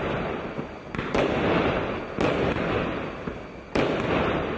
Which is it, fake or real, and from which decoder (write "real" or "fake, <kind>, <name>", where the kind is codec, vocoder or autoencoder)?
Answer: real